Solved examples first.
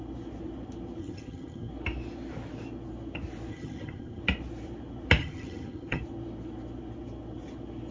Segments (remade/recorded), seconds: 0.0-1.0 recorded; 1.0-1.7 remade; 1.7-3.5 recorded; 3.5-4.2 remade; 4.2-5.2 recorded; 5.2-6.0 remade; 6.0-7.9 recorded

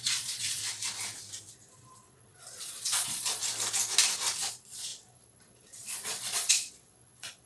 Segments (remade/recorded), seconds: 0.0-0.6 remade; 0.6-1.5 recorded; 1.5-3.4 remade; 3.4-4.5 recorded; 4.5-7.5 remade

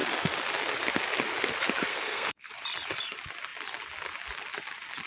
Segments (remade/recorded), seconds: 0.0-1.9 recorded; 1.9-2.5 remade; 2.5-5.1 recorded

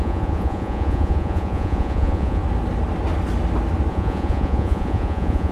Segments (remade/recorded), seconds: 0.0-2.4 remade; 2.4-3.9 recorded; 3.9-5.5 remade